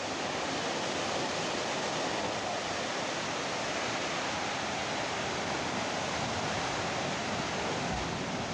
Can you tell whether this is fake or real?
real